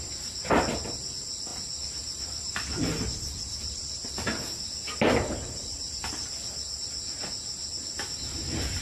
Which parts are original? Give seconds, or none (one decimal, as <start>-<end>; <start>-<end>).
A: 0.0-1.5; 4.4-8.8